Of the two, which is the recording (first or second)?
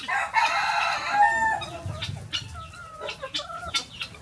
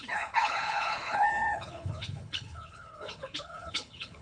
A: first